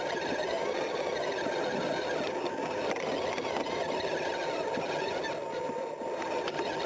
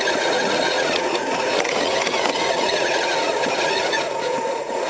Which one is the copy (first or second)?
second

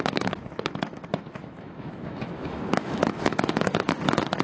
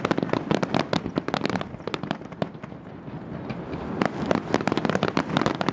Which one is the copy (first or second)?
first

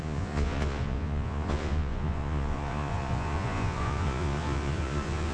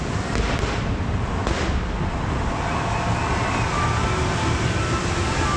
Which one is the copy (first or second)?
first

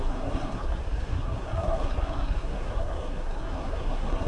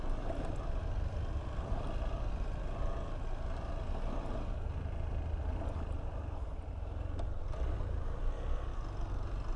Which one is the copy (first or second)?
first